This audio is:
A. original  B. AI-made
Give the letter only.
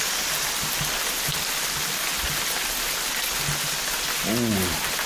A